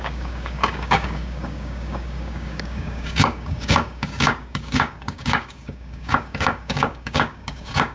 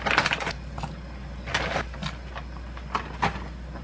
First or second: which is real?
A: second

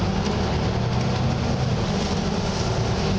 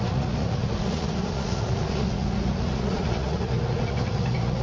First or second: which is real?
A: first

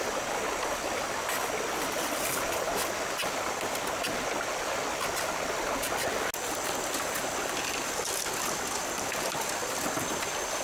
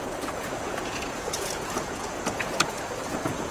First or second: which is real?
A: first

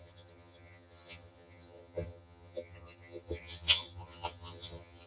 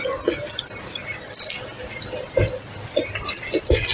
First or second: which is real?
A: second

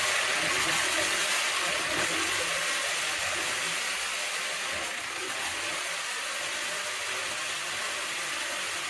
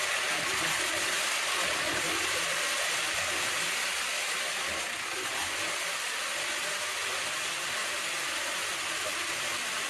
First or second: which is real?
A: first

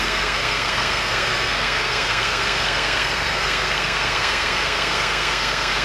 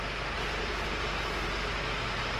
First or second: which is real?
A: second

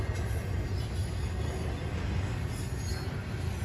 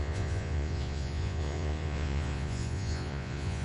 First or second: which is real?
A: first